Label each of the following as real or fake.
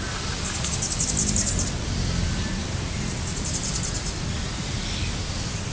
real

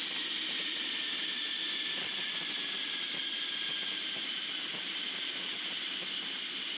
real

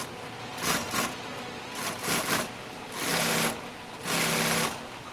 real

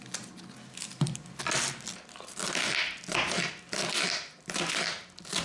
real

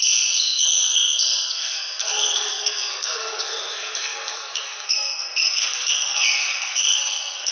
fake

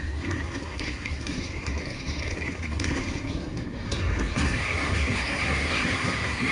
fake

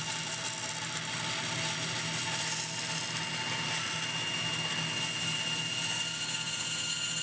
real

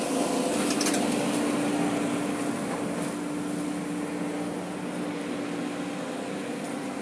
real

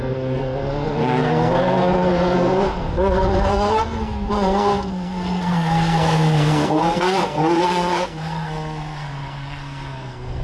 fake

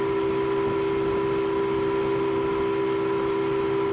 real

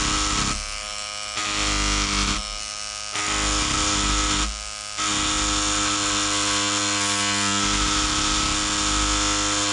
real